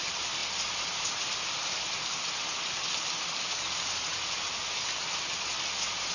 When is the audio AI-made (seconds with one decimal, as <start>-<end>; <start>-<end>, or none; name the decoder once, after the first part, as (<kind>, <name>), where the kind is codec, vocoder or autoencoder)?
none